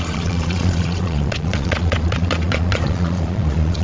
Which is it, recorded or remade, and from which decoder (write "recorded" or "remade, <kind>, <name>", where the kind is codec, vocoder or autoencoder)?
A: remade, vocoder, Vocos